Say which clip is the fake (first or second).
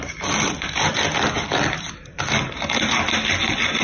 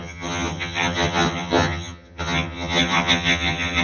second